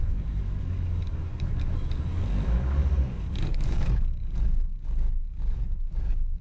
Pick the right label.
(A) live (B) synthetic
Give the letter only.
B